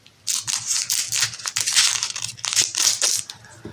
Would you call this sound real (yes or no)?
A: yes